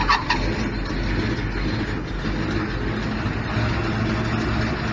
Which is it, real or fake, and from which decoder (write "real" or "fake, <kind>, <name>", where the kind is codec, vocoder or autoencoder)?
real